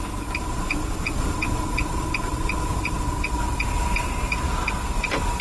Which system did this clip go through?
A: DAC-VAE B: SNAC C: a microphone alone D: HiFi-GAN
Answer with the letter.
C